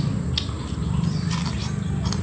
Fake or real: real